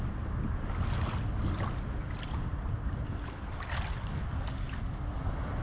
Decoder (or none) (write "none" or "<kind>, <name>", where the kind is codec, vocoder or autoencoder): none